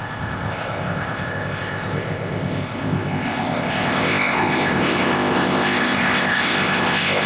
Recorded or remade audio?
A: remade